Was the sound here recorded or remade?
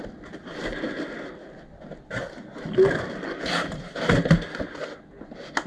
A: recorded